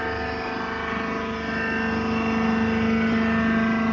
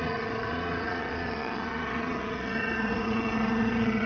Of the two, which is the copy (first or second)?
second